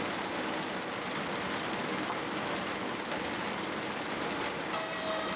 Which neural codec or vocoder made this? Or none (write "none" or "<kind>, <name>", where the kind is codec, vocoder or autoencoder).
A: none